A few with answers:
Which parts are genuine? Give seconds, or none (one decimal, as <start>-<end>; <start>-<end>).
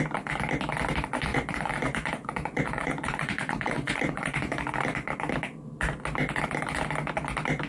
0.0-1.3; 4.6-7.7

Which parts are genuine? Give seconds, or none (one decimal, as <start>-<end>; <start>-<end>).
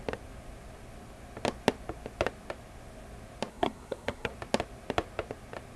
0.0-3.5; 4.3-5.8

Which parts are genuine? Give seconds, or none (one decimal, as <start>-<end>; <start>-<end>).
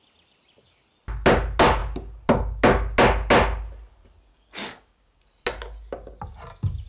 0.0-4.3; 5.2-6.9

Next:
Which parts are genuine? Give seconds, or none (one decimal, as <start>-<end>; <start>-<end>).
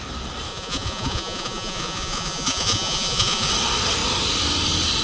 0.0-0.5; 3.5-5.0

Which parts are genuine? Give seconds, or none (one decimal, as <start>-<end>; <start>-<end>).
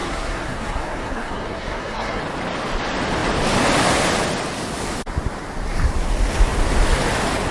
2.2-7.5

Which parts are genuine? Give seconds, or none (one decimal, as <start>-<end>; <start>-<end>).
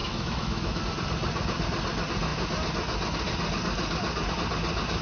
0.8-5.0